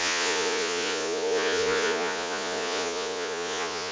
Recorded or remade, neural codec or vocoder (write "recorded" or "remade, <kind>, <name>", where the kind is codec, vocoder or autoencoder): remade, vocoder, Vocos